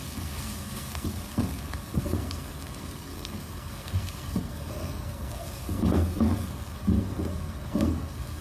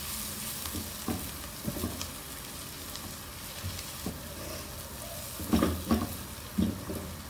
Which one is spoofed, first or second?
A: first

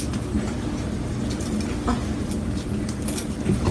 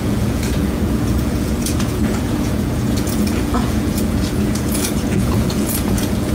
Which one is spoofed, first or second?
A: second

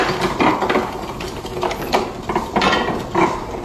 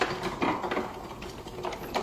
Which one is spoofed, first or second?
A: first